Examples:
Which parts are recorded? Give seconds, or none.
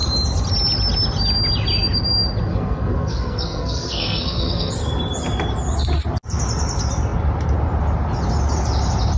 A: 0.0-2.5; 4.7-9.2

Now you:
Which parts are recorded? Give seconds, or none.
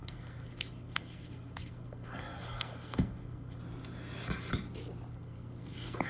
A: 3.6-5.1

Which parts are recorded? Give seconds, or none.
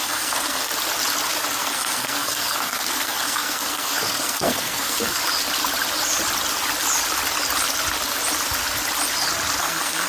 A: 0.7-1.5; 5.2-9.6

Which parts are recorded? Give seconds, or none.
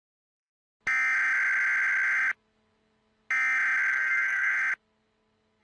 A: 0.5-3.9; 4.5-5.6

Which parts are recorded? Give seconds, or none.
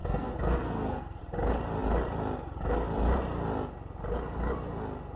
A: 1.2-5.2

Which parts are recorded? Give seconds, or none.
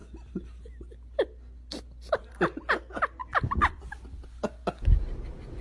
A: 0.0-5.6